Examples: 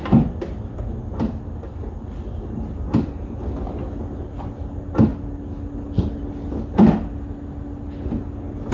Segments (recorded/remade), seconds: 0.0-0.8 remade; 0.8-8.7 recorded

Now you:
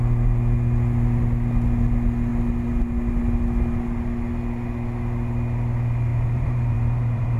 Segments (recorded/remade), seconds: 0.0-6.1 recorded; 6.1-7.4 remade

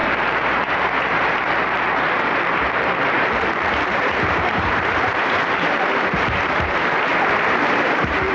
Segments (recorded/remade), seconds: 0.0-7.1 remade; 7.1-7.9 recorded; 7.9-8.3 remade